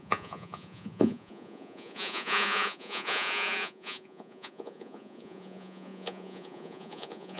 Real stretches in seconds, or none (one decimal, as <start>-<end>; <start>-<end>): none